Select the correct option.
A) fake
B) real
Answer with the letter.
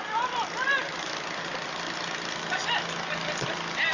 B